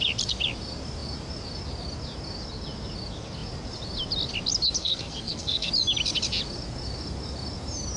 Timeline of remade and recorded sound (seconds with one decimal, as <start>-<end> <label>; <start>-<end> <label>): 0.0-4.8 recorded; 4.8-5.7 remade; 5.7-8.0 recorded